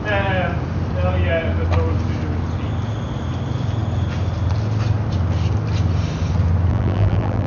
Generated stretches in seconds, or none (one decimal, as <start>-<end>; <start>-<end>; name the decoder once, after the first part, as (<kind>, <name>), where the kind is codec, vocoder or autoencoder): 6.7-7.5 (vocoder, BigVGAN v2)